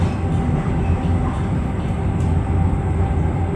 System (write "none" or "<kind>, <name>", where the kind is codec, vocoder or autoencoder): none